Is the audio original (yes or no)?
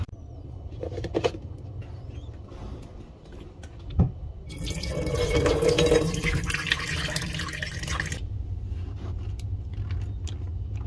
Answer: yes